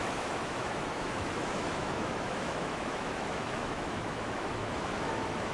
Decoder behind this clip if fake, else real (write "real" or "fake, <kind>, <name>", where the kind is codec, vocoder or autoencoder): fake, autoencoder, DAC-VAE